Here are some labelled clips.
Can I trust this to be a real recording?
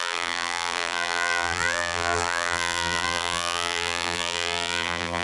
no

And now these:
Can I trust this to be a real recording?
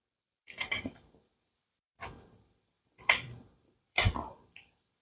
no